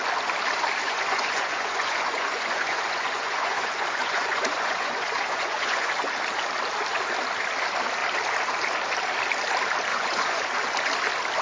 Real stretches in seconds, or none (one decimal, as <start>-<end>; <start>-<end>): 0.0-0.8; 5.9-9.9; 10.4-11.4